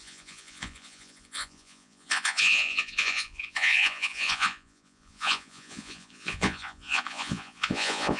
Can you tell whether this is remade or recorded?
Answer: remade